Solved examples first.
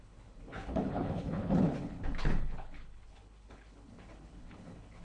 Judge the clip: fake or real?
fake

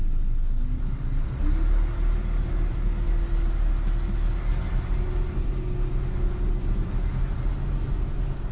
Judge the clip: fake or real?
real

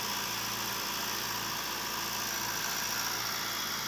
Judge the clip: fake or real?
real